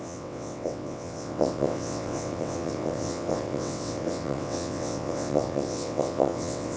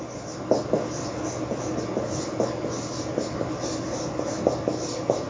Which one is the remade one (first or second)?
first